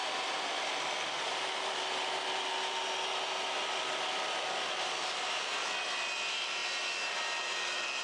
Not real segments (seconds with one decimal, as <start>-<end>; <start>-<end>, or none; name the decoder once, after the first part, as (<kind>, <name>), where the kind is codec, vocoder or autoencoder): none